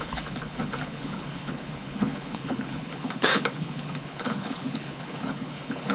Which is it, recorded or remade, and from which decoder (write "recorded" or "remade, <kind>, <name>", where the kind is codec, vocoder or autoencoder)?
remade, codec, HILCodec